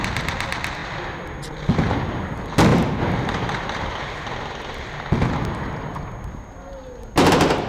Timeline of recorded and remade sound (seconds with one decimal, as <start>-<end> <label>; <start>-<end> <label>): 0.0-7.7 recorded

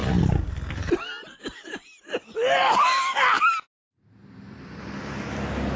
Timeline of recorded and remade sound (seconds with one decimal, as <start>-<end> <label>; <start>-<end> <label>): 0.0-5.8 recorded

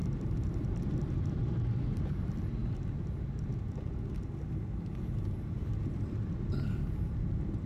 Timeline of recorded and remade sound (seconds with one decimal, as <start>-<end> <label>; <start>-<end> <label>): 0.0-2.0 remade; 2.0-7.7 recorded

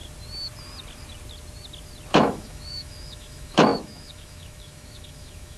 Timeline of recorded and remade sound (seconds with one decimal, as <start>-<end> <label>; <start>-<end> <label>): 0.0-2.1 recorded; 2.1-5.6 remade

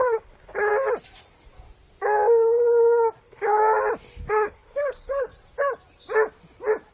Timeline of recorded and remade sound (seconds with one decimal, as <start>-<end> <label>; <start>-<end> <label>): 0.0-0.7 remade; 0.7-3.2 recorded; 3.2-3.6 remade; 3.6-4.3 recorded; 4.3-5.3 remade; 5.3-6.9 recorded

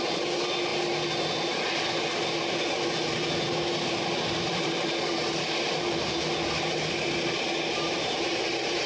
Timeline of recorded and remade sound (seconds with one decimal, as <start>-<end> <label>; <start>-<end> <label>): 0.0-8.9 recorded